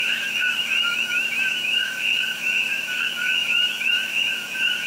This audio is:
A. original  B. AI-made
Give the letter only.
B